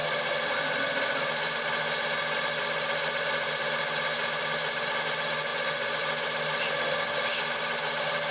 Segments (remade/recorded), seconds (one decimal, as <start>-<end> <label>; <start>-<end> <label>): 0.0-8.3 recorded